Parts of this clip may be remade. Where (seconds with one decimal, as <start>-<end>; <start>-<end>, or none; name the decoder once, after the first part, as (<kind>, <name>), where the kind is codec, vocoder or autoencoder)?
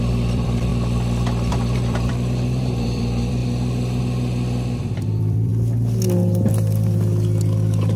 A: 0.0-0.7 (vocoder, BigVGAN v2); 1.5-3.4; 4.0-5.5